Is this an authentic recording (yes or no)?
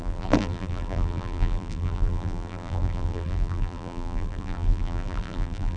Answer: no